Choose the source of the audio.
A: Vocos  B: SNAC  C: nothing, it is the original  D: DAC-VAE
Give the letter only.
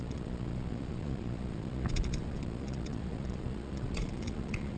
A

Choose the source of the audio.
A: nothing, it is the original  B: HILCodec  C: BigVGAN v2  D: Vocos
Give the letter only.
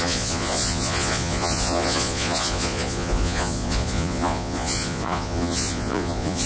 D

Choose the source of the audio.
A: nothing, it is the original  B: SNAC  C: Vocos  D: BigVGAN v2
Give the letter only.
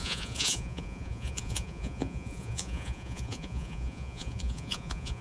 C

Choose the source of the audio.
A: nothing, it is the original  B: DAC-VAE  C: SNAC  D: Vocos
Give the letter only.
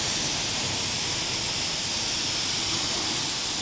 A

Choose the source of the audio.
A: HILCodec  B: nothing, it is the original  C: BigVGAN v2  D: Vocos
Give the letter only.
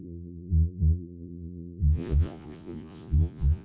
D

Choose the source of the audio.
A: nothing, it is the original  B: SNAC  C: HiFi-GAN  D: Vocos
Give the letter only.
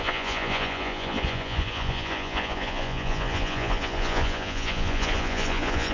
D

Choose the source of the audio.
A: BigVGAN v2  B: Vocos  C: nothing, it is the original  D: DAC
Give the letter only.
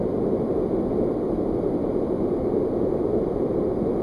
C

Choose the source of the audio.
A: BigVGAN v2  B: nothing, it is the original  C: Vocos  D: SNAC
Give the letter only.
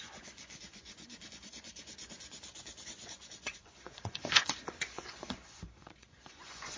C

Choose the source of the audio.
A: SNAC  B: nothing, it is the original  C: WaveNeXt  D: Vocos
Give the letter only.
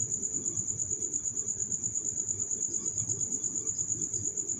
B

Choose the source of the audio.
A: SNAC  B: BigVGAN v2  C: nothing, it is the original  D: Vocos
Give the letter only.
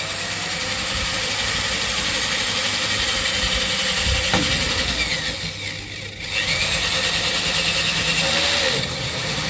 C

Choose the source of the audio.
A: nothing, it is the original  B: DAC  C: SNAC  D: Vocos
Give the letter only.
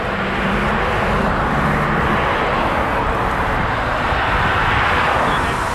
A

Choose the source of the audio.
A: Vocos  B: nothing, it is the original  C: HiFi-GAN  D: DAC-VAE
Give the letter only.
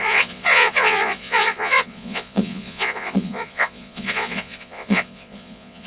A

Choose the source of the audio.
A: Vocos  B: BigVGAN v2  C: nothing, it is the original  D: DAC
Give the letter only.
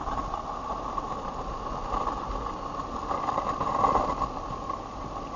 C